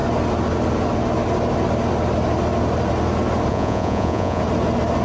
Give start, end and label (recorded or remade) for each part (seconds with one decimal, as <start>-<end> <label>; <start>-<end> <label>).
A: 0.0-3.5 recorded; 3.5-4.4 remade; 4.4-5.0 recorded